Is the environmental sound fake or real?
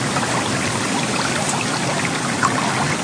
real